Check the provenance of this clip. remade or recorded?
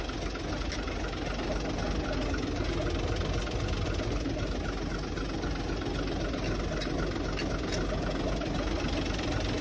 recorded